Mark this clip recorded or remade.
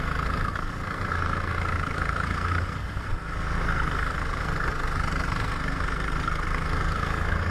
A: remade